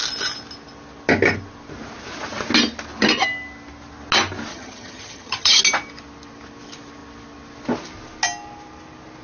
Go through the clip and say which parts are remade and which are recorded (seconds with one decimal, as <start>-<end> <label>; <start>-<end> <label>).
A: 0.0-4.5 recorded; 4.5-5.6 remade; 5.6-9.2 recorded